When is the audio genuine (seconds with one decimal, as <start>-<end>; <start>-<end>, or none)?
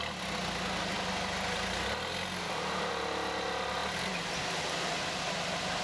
0.0-5.8